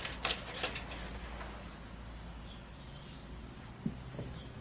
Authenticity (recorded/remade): recorded